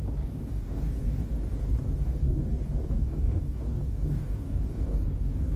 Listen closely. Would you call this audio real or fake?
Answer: fake